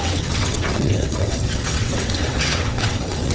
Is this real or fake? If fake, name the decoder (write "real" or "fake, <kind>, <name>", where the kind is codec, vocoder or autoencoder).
fake, vocoder, WaveNeXt